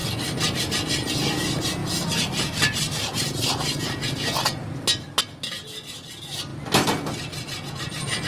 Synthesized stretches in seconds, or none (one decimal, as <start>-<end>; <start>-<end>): none